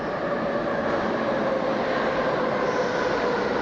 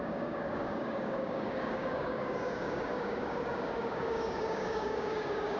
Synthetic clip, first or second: second